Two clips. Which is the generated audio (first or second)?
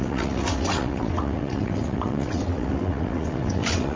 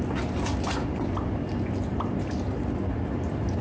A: first